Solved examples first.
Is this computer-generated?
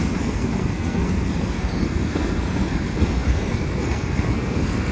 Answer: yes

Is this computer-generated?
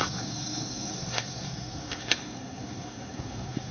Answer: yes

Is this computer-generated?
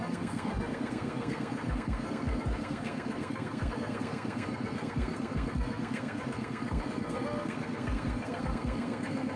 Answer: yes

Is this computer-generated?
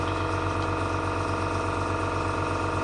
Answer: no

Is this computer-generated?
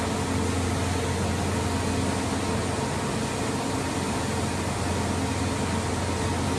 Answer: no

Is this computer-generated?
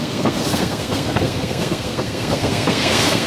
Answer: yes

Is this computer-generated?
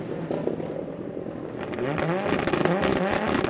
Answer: no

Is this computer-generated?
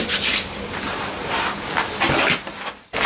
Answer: no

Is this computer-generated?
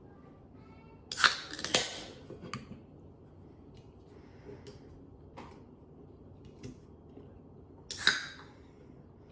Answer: no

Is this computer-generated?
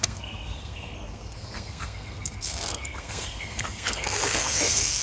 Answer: yes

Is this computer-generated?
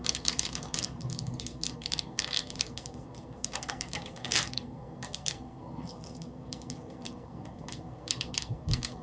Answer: yes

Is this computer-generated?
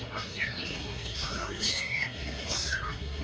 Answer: yes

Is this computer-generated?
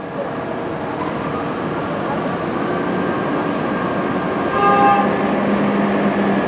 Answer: no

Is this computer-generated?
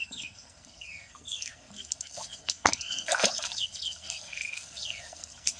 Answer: yes